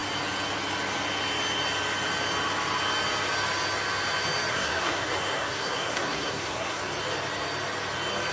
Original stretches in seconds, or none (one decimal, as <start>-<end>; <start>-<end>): 0.0-4.5; 6.8-8.3